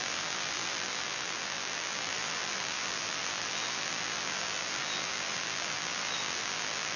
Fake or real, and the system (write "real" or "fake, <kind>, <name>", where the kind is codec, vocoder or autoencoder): fake, vocoder, BigVGAN v2